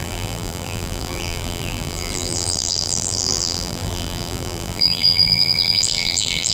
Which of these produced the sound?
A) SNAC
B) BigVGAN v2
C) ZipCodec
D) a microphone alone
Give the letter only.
B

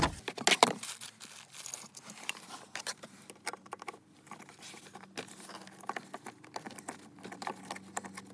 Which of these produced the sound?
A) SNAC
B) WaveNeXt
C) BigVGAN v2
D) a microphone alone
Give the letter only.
D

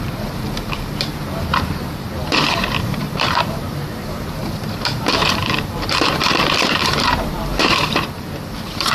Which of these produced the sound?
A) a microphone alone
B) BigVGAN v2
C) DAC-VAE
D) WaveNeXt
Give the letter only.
B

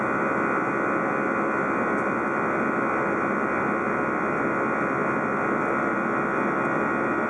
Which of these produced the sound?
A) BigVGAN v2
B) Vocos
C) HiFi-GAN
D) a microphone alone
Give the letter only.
D